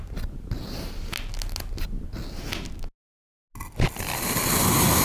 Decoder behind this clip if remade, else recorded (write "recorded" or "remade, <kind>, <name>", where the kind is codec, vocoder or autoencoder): recorded